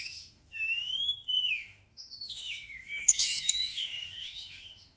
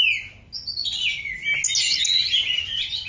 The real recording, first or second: second